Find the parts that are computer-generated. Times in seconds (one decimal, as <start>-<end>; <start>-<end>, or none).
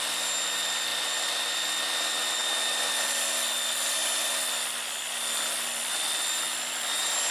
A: none